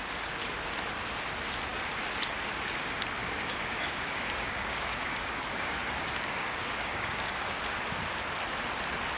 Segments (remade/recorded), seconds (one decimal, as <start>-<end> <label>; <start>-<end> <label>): 0.0-3.2 recorded; 3.2-7.6 remade; 7.6-9.2 recorded